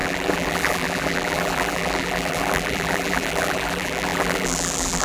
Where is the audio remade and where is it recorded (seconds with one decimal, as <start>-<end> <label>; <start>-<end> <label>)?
0.0-5.0 remade